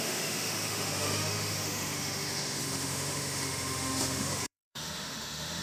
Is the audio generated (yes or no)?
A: yes